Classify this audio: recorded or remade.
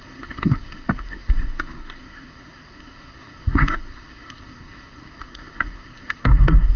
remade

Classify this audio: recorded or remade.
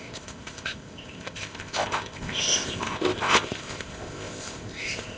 remade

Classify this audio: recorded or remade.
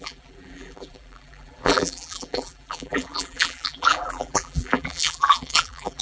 remade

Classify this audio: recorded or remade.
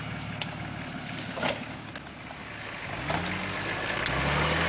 recorded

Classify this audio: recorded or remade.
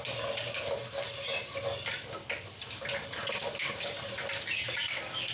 remade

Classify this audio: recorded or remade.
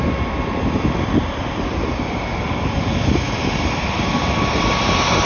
recorded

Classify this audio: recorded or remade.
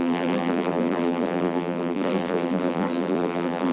remade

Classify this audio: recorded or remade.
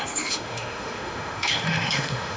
remade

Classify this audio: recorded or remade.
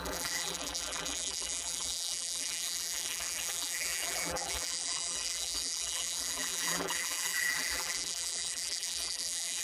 remade